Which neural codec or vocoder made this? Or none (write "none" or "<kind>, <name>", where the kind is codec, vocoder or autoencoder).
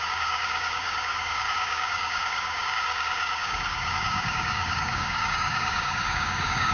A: codec, DAC